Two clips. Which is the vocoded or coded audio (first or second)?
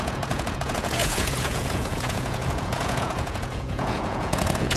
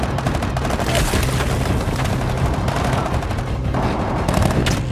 first